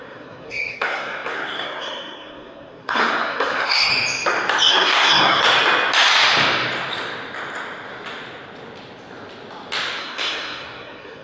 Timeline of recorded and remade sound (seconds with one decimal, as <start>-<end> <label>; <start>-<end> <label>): 0.0-3.9 remade; 3.9-4.7 recorded; 4.7-5.4 remade; 5.4-10.0 recorded; 10.0-11.2 remade